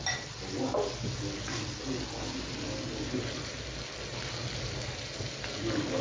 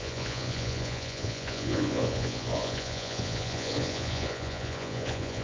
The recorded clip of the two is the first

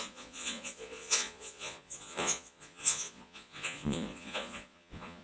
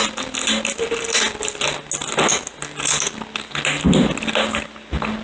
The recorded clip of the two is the second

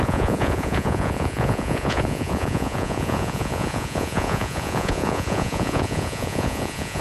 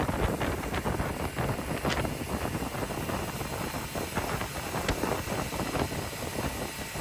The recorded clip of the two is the second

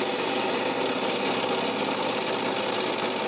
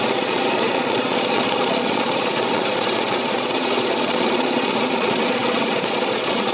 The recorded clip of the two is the first